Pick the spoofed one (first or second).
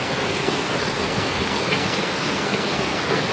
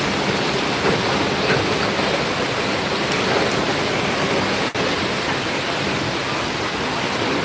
first